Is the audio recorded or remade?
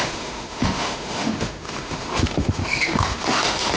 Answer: remade